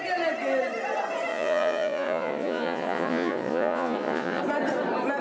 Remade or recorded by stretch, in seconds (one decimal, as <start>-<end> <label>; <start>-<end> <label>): 0.0-1.3 recorded; 1.3-4.4 remade; 4.4-5.2 recorded